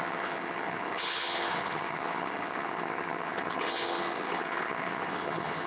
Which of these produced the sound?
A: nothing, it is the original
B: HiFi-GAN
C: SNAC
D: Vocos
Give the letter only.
B